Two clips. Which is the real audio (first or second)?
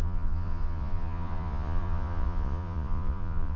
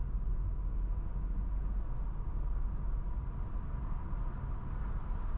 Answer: second